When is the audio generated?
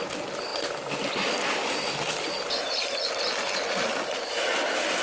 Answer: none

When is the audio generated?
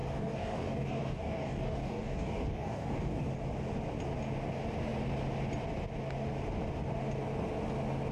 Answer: 0.0-3.3 (codec, DAC)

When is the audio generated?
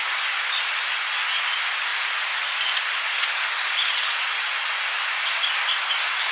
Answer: none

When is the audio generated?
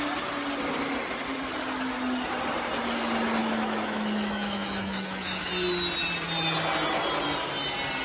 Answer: 3.4-5.5 (autoencoder, DAC-VAE)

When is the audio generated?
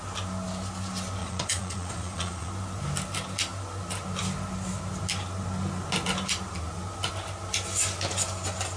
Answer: 1.2-2.5 (vocoder, Vocos)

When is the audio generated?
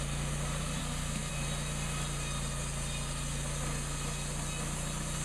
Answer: 0.8-1.3 (codec, SNAC)